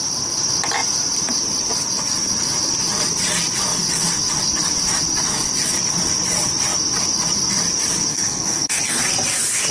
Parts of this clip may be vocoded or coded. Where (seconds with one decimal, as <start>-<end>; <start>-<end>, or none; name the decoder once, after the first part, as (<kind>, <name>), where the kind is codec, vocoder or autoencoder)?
8.1-9.0 (codec, SNAC)